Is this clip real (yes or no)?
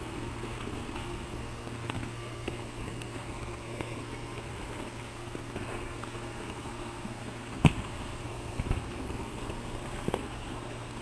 no